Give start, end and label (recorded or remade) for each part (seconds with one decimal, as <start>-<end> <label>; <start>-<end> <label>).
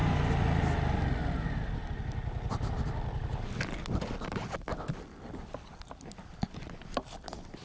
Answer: 0.0-7.6 recorded